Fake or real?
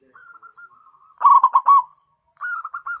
real